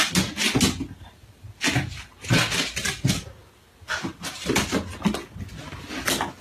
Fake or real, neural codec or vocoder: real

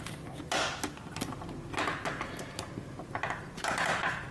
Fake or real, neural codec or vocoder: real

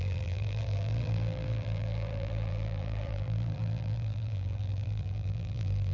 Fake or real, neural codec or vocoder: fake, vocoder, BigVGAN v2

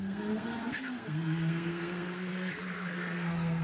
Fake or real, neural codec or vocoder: fake, codec, SNAC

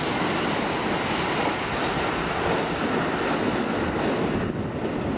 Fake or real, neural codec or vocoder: real